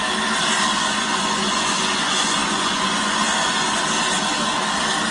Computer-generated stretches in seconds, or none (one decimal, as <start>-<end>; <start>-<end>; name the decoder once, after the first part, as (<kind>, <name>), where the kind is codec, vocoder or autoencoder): 0.7-3.8 (vocoder, Vocos)